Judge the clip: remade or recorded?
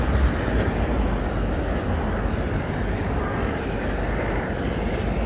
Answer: recorded